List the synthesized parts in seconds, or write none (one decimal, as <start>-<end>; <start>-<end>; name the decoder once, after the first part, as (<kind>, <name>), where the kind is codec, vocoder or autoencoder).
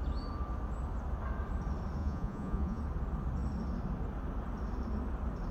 2.0-2.8 (vocoder, Vocos)